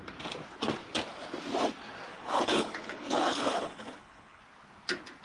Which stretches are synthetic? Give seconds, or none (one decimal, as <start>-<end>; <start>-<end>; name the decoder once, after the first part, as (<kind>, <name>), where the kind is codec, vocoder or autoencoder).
2.1-4.4 (codec, HILCodec)